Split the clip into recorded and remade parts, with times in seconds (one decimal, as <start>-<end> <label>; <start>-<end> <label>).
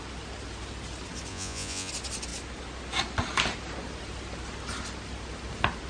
0.0-1.3 recorded; 1.3-1.9 remade; 1.9-5.9 recorded